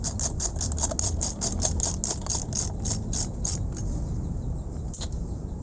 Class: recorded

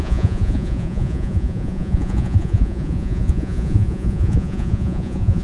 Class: remade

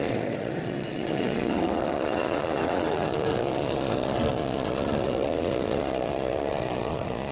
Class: remade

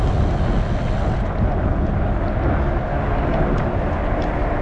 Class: recorded